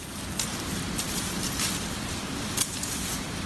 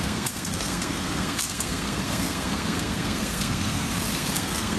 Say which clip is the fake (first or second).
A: second